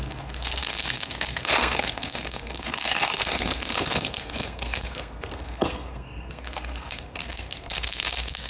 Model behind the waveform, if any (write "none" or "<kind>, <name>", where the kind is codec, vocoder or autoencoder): codec, SNAC